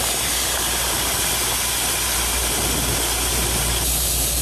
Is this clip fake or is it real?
real